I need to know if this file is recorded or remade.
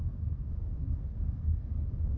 remade